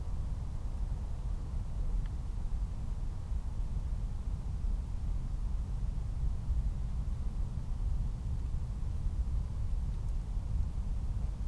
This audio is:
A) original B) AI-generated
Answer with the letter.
A